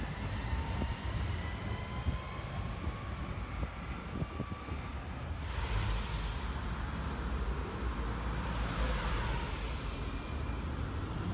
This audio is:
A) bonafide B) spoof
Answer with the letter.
A